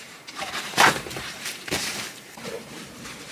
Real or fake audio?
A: fake